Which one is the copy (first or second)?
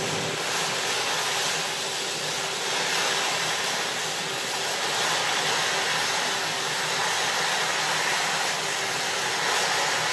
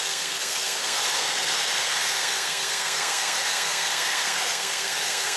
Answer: second